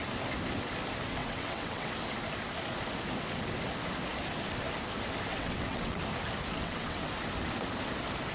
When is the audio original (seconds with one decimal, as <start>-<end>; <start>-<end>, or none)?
0.0-1.2; 1.9-5.3; 6.0-6.5; 7.1-8.3